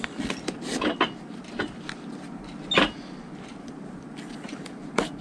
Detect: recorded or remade recorded